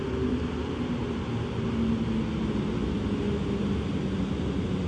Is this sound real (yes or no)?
yes